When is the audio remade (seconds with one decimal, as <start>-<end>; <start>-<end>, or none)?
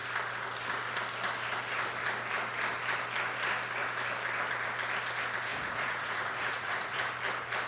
5.5-7.0